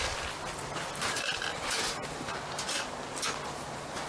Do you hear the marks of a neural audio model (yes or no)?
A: no